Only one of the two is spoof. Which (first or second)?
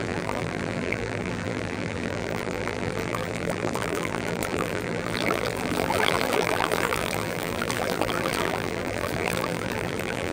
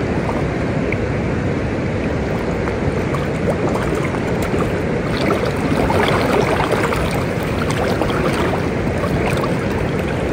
first